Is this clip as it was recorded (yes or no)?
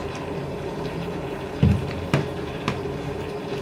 no